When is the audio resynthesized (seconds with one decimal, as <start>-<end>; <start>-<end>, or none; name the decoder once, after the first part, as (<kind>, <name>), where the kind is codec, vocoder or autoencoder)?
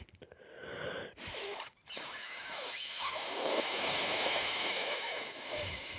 2.2-6.0 (autoencoder, DAC-VAE)